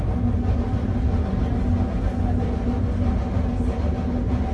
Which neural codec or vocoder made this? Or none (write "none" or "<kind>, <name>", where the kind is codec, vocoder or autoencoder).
none